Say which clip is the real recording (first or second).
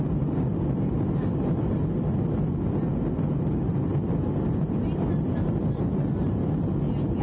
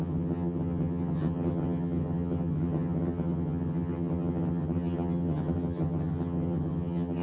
first